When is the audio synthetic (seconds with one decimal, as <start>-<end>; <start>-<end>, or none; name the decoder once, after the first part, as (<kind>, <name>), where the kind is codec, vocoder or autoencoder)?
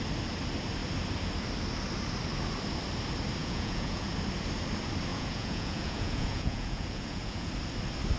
3.4-4.1 (vocoder, Vocos); 5.1-7.5